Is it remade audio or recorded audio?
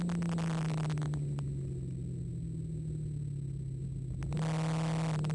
recorded